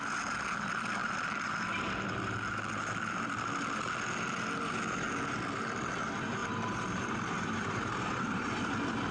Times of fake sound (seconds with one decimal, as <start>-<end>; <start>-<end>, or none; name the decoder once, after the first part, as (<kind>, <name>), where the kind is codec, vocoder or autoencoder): 6.4-8.6 (vocoder, BigVGAN v2)